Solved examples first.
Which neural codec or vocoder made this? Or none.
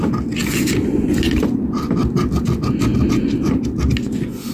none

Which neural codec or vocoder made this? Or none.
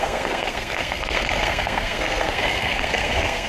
codec, SNAC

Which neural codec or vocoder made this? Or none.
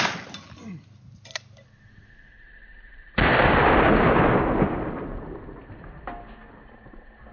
none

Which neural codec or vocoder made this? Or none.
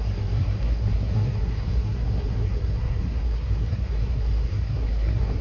codec, SNAC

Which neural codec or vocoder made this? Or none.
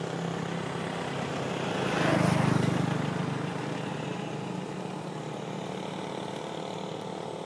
none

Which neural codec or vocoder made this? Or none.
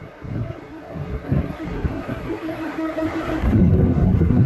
codec, SNAC